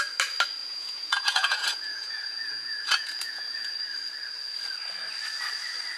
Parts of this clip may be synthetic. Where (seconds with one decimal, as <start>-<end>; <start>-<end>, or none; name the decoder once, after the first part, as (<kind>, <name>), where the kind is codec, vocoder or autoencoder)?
0.6-3.7 (vocoder, Vocos)

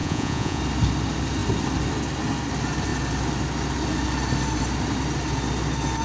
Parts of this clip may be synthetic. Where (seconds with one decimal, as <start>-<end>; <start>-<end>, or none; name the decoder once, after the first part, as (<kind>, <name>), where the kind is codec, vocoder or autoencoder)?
0.0-0.6 (vocoder, Vocos)